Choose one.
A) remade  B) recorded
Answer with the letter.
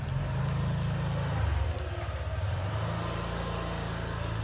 B